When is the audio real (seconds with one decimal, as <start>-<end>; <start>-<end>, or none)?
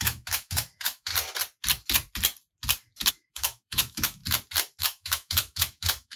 1.1-3.1; 4.2-4.8